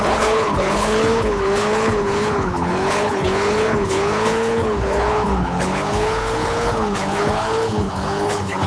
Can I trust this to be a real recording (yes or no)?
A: no